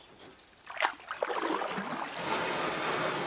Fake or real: real